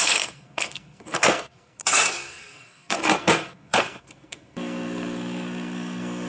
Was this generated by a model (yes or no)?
yes